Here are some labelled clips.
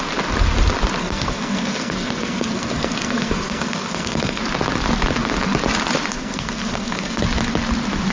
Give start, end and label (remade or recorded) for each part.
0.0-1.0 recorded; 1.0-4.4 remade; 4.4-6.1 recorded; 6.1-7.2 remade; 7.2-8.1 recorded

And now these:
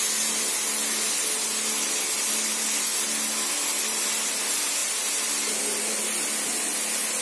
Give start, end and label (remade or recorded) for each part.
0.0-7.2 recorded

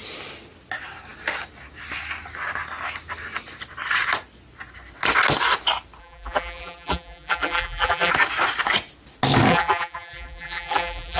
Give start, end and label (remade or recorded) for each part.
0.0-6.0 recorded; 6.0-8.1 remade; 8.1-9.5 recorded; 9.5-11.2 remade

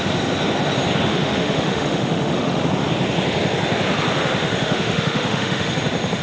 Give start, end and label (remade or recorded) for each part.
0.0-1.1 recorded; 1.1-2.6 remade; 2.6-4.4 recorded; 4.4-5.7 remade; 5.7-6.2 recorded